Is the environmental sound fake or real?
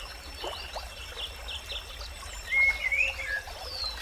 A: real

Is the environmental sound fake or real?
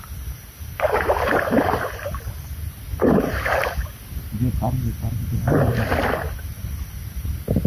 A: real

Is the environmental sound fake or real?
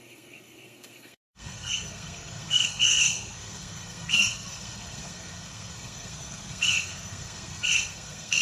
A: fake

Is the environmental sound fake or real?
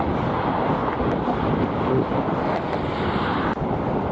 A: real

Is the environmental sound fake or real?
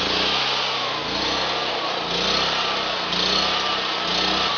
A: real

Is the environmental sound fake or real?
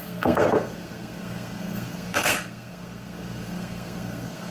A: fake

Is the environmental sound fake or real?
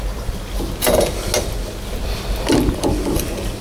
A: real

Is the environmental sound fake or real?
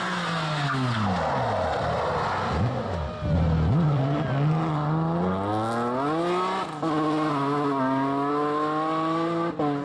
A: real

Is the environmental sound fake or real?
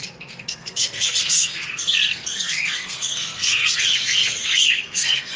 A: fake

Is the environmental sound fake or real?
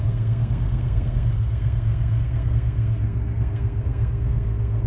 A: fake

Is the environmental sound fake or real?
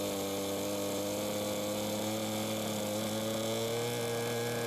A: real